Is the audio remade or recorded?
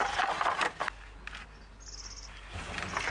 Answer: recorded